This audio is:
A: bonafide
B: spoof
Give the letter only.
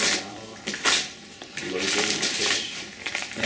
B